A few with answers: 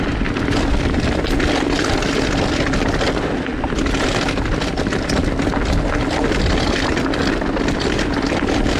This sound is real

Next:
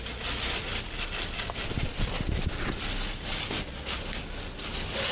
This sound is real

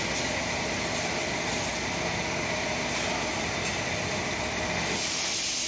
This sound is real